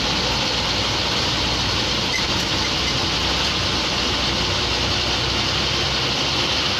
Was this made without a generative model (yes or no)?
yes